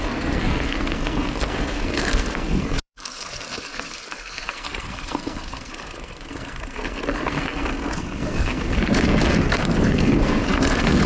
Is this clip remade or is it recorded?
remade